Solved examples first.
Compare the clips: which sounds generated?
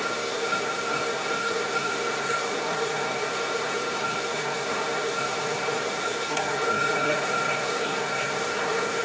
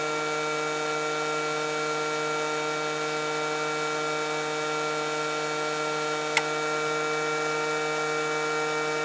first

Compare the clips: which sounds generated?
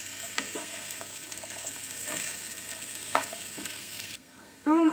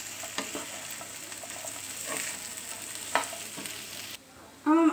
first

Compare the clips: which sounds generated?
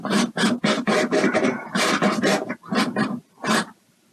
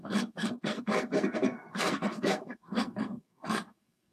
second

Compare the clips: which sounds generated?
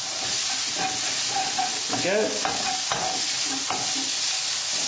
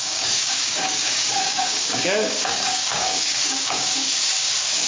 second